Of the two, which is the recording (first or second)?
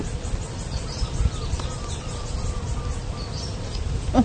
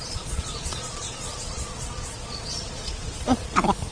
first